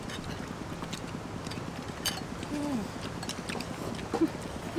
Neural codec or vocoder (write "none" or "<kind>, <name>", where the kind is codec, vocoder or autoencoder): none